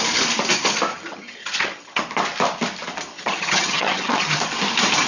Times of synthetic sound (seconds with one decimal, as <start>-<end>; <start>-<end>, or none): 0.9-2.0; 3.1-4.4